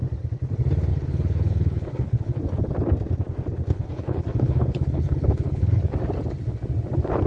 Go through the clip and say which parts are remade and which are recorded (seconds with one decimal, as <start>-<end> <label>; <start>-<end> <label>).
0.0-0.9 recorded; 0.9-2.4 remade; 2.4-3.7 recorded; 3.7-5.8 remade; 5.8-7.3 recorded